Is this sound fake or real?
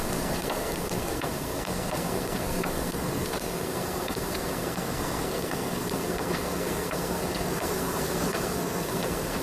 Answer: fake